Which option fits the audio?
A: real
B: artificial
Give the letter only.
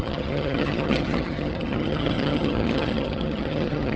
B